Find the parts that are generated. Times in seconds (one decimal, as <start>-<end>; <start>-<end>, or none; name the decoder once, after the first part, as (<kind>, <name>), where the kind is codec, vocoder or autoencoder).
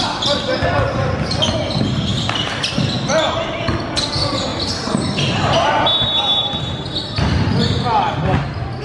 none